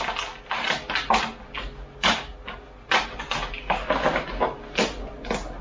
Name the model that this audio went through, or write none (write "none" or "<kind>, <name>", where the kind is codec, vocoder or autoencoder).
none